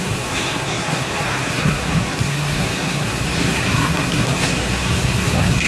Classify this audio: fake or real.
fake